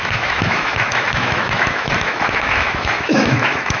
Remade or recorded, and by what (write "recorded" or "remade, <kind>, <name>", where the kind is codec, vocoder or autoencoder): remade, autoencoder, DAC-VAE